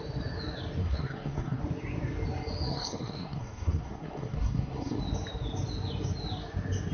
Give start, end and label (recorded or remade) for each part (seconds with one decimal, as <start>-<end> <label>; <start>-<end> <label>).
0.0-0.8 recorded; 0.8-1.6 remade; 1.6-2.7 recorded; 2.7-5.0 remade; 5.0-6.9 recorded